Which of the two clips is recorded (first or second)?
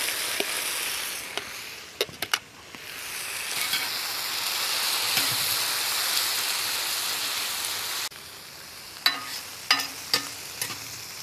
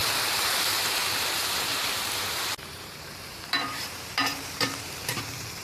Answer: first